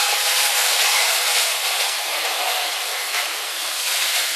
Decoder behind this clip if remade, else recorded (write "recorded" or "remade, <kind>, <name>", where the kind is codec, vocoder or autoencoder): remade, codec, SNAC